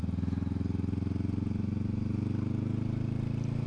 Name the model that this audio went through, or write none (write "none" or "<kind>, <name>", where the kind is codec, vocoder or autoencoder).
none